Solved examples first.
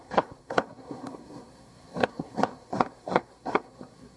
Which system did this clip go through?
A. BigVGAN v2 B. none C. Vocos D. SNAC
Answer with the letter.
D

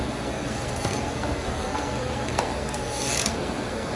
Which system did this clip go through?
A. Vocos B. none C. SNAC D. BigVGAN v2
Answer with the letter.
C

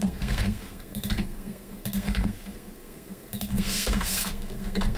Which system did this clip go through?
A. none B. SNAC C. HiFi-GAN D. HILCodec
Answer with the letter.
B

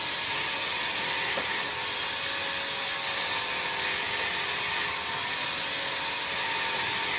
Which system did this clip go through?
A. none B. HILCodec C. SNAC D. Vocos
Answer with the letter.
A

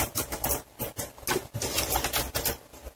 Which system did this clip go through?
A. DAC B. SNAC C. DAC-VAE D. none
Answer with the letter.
D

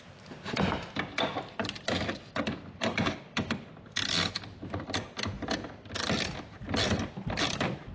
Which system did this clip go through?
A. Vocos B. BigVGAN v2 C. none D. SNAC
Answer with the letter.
C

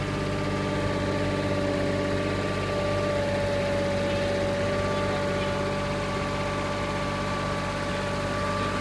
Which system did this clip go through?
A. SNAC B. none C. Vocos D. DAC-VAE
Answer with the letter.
B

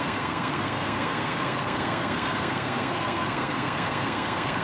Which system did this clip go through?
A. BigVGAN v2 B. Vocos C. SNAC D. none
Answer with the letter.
C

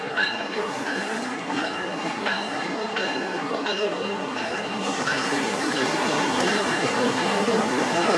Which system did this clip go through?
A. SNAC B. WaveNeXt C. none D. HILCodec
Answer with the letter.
A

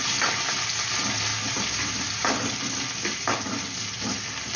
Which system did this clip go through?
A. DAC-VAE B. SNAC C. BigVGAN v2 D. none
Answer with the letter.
D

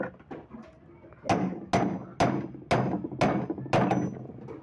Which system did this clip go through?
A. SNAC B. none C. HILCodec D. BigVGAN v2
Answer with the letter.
B